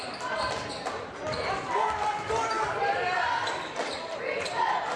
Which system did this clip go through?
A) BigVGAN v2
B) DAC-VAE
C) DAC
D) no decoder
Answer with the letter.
A